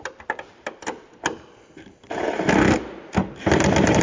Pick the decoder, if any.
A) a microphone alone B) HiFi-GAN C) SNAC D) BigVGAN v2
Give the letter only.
A